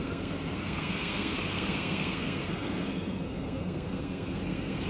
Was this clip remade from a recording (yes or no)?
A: yes